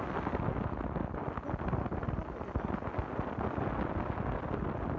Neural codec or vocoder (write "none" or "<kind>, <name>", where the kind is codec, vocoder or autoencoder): none